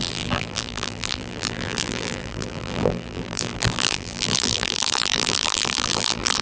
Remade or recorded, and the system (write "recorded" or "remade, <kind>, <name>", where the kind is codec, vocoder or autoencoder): remade, vocoder, BigVGAN v2